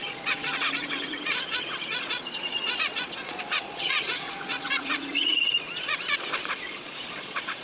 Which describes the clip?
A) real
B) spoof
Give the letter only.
B